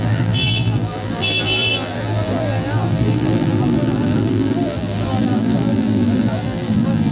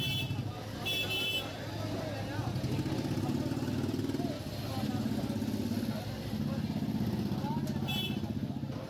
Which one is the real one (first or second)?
second